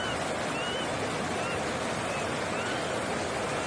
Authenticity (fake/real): real